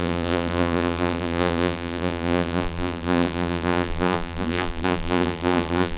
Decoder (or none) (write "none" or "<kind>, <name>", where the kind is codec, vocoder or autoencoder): vocoder, BigVGAN v2